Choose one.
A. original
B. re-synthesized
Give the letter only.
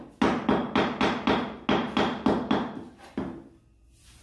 A